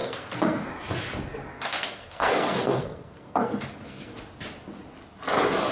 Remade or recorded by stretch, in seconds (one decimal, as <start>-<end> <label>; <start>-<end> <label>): 0.0-0.7 remade; 0.7-1.5 recorded; 1.5-4.2 remade; 4.2-5.7 recorded